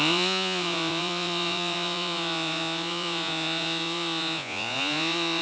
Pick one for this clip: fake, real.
fake